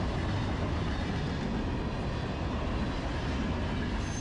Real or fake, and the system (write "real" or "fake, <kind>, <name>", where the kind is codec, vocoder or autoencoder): real